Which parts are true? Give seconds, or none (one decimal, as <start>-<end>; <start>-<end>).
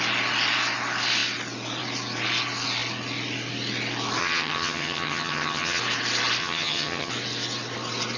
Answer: 0.0-4.2; 5.8-6.4; 7.1-8.2